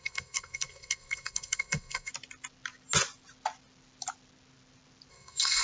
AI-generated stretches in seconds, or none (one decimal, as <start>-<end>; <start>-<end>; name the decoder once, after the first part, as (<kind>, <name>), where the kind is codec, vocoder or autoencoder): 0.0-2.1 (codec, SNAC); 5.1-5.6